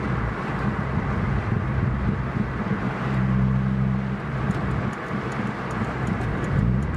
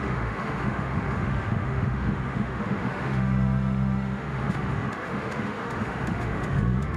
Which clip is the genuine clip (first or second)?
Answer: first